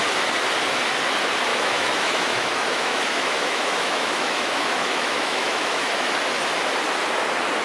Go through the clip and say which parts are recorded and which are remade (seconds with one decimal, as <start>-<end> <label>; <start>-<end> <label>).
0.0-1.5 recorded; 1.5-6.1 remade; 6.1-7.6 recorded